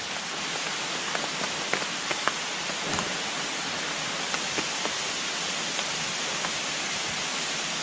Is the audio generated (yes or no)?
no